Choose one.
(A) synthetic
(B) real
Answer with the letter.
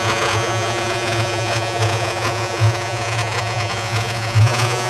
A